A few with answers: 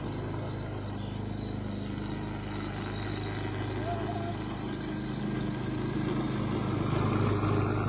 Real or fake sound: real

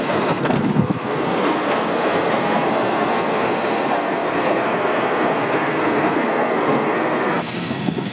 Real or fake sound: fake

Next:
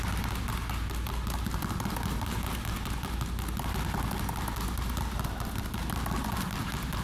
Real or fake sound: real